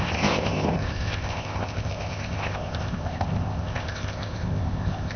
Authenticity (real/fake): fake